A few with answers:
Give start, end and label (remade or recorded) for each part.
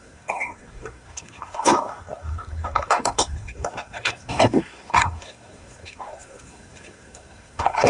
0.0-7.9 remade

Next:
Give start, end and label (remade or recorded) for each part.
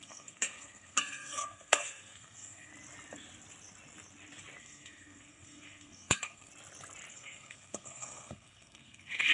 0.0-2.7 remade; 2.7-4.6 recorded; 4.6-6.5 remade; 6.5-7.1 recorded; 7.1-9.3 remade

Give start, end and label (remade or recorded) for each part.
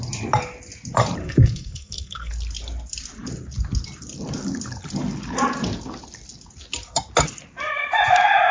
0.0-1.2 recorded; 1.2-2.3 remade; 2.3-8.5 recorded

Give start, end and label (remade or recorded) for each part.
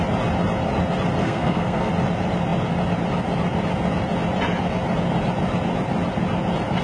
0.0-1.2 recorded; 1.2-1.9 remade; 1.9-6.8 recorded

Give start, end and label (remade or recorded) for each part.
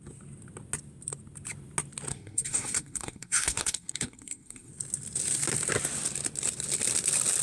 0.0-2.1 recorded; 2.1-4.7 remade; 4.7-7.4 recorded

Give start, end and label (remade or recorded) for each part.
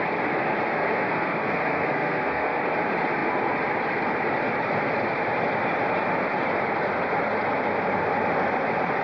0.0-0.7 recorded; 0.7-2.6 remade; 2.6-9.0 recorded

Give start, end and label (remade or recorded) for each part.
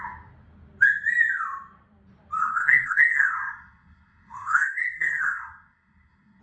0.0-2.4 recorded; 2.4-6.4 remade